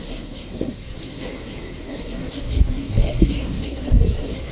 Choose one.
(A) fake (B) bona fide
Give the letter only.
A